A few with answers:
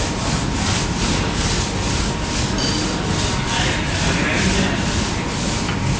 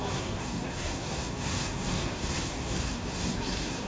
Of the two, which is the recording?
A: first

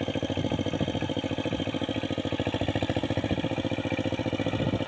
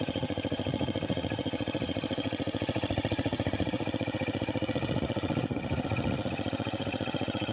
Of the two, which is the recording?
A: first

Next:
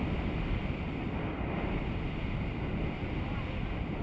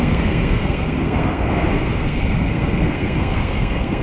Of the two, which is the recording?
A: first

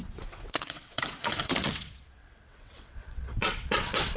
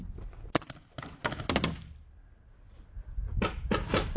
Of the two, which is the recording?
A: second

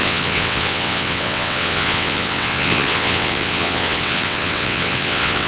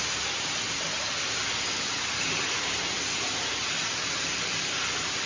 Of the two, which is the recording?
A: second